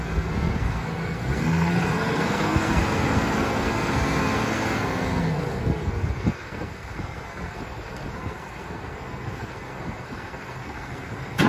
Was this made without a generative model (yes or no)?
no